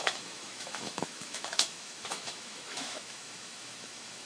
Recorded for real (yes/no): no